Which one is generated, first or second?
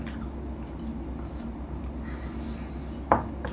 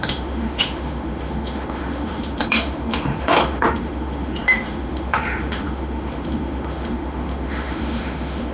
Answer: second